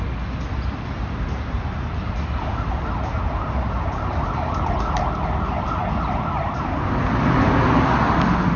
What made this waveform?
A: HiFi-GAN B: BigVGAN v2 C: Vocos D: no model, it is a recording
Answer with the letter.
D